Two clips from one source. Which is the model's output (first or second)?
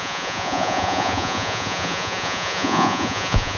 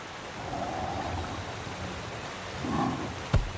first